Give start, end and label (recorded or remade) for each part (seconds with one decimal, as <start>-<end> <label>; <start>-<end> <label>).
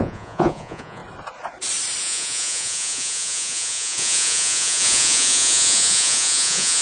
0.0-1.0 remade; 1.0-2.0 recorded; 2.0-6.8 remade